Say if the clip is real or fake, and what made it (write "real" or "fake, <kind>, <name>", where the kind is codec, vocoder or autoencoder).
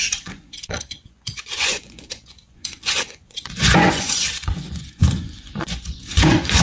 fake, vocoder, Vocos